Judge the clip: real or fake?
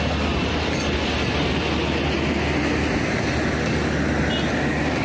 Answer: real